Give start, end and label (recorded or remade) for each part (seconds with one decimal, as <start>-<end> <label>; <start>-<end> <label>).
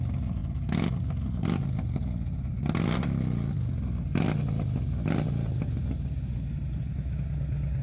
0.0-7.8 recorded